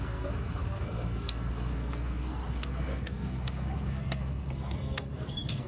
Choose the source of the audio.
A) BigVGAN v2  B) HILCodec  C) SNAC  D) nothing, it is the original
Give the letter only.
C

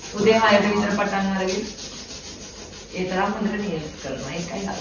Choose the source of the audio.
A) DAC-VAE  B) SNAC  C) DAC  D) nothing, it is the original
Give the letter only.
D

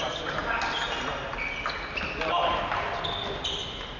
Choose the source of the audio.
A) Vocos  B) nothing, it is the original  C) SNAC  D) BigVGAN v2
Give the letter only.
B